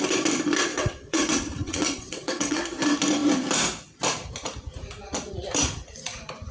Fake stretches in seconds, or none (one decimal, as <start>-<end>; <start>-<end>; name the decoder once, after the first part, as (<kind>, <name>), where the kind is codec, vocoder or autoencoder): 0.7-2.6 (vocoder, WaveNeXt)